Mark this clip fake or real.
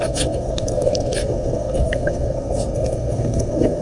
fake